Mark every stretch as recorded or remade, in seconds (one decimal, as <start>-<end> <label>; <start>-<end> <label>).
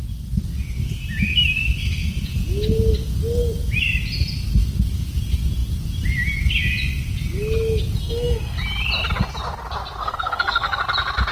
0.0-8.0 recorded; 8.0-8.6 remade; 8.6-10.0 recorded; 10.0-10.8 remade; 10.8-11.3 recorded